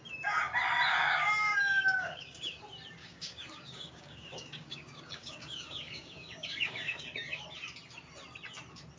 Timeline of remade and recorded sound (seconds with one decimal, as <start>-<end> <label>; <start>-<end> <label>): 0.0-0.9 recorded; 0.9-2.6 remade; 2.6-3.0 recorded; 3.0-7.4 remade; 7.4-9.0 recorded